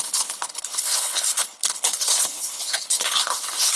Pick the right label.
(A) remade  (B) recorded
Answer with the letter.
A